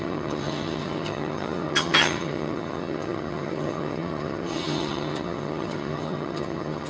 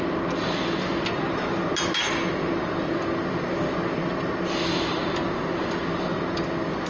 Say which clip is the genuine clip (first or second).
second